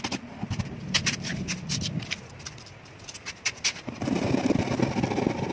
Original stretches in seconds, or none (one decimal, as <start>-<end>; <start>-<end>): 0.0-5.5